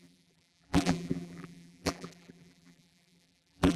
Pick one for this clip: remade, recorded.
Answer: remade